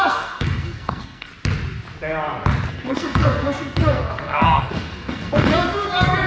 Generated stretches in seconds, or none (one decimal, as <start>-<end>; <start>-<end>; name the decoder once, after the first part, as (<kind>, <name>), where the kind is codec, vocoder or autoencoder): 0.0-1.3 (codec, SNAC); 2.7-6.3